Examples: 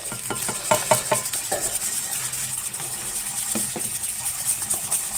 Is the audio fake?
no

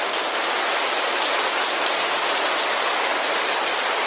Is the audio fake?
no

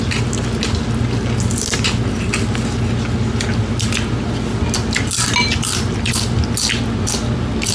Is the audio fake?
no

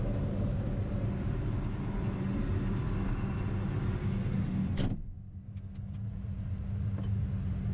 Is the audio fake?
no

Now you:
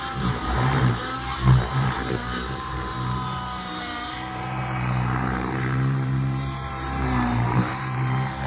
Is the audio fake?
yes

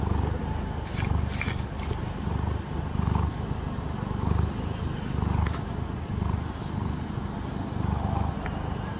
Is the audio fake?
no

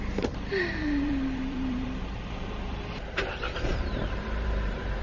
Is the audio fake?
yes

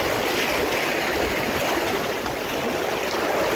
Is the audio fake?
no